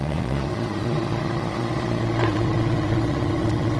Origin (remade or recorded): remade